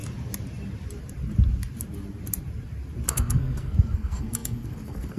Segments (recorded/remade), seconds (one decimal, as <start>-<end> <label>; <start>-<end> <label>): 0.0-3.1 recorded; 3.1-5.2 remade